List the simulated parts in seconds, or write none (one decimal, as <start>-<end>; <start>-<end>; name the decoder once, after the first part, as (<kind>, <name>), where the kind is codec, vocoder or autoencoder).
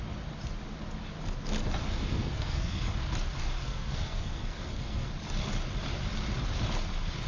1.8-2.9 (codec, SNAC); 3.6-5.1